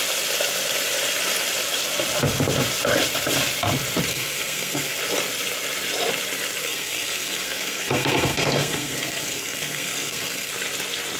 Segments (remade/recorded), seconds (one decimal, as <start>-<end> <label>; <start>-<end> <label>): 0.0-4.1 recorded; 4.1-5.0 remade; 5.0-6.6 recorded; 6.6-10.5 remade; 10.5-11.2 recorded